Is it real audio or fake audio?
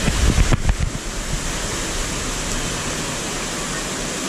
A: real